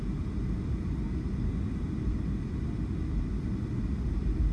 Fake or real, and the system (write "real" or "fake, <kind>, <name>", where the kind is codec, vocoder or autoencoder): real